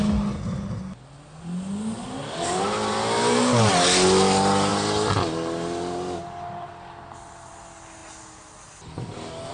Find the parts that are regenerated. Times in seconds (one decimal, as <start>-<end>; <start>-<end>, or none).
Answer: none